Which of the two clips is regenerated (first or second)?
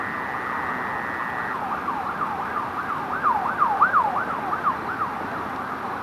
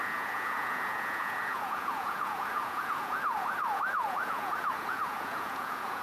second